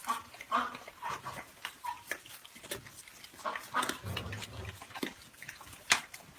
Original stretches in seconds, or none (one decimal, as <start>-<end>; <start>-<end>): 2.4-4.2